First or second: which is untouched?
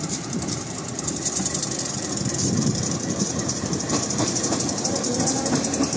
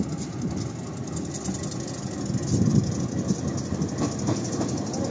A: second